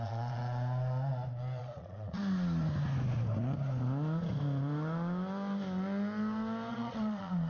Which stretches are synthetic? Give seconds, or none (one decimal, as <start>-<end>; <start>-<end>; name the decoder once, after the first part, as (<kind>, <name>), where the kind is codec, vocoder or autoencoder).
0.0-0.4 (vocoder, Vocos); 1.6-2.2; 6.7-7.5